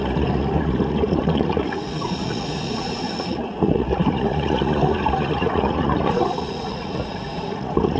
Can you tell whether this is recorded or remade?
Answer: remade